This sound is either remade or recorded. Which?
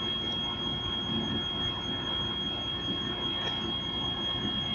recorded